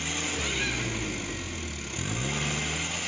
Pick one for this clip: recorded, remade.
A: recorded